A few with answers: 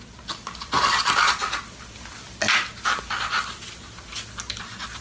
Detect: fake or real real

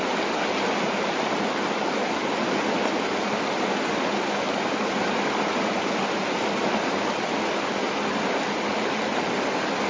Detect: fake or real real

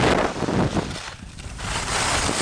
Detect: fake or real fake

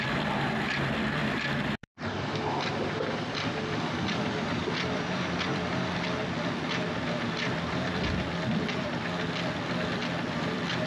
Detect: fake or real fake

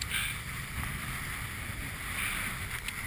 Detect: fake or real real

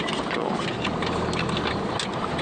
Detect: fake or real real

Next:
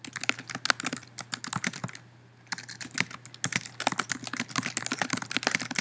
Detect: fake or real real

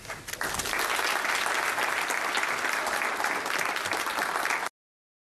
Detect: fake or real real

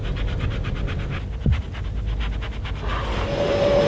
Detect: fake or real real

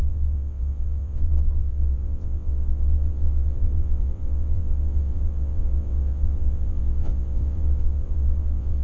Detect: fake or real fake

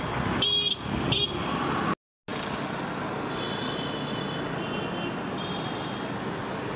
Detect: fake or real real